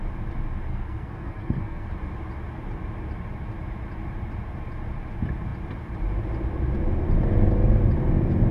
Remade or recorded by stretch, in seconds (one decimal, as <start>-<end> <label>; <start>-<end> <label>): 0.0-0.7 recorded; 0.7-1.9 remade; 1.9-8.5 recorded